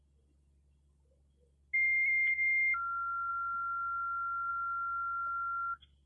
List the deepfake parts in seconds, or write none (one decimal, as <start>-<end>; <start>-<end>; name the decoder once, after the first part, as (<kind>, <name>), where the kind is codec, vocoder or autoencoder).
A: none